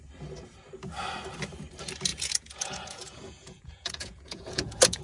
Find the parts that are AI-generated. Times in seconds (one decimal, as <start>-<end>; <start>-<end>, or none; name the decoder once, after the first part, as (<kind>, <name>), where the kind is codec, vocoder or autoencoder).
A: 2.1-5.0 (vocoder, Vocos)